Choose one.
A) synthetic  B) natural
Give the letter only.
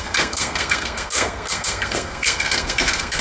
A